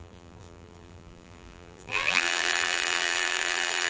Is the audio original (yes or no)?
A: no